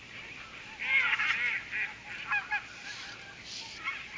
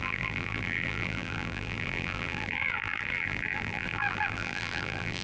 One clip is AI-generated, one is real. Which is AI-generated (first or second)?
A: second